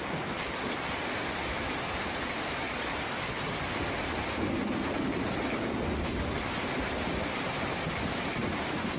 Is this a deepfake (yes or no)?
no